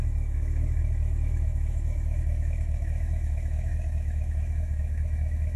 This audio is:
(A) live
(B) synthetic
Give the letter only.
B